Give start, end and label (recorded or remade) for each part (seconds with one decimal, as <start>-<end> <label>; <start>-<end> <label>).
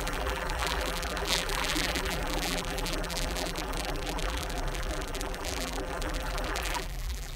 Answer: 0.0-7.4 remade